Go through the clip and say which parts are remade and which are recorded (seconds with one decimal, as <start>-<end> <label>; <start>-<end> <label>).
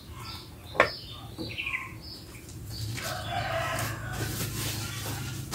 0.0-5.5 recorded